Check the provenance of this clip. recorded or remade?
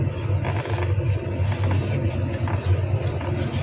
recorded